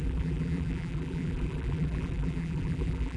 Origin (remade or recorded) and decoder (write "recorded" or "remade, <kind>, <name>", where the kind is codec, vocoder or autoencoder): remade, vocoder, BigVGAN v2